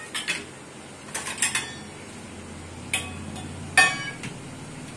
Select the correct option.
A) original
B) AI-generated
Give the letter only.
A